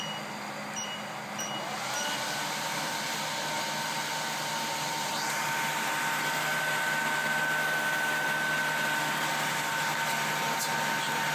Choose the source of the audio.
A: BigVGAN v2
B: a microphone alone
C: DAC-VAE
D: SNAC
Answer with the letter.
B